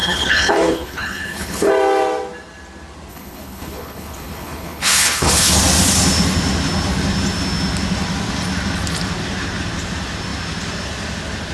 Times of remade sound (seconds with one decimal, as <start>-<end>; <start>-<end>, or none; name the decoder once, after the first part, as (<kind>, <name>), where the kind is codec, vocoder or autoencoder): 0.0-1.7 (codec, HILCodec); 3.1-5.5